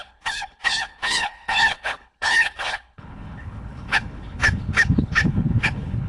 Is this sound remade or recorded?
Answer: remade